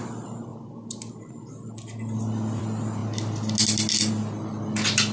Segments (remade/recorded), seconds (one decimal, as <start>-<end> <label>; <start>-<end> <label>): 0.0-5.1 recorded